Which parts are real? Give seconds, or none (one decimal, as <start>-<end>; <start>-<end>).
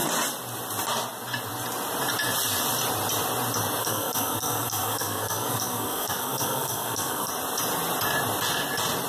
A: 0.0-3.8; 7.3-9.1